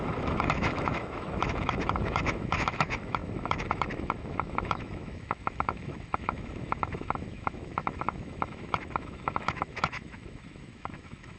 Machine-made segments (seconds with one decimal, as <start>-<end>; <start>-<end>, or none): 0.0-11.4